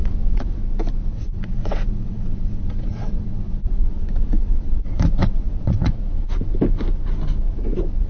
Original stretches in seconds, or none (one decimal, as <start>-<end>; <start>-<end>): 0.6-1.0; 5.9-8.1